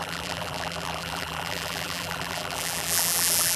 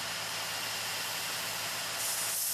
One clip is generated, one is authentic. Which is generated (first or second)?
first